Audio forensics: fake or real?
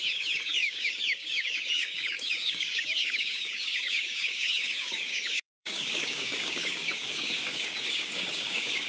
fake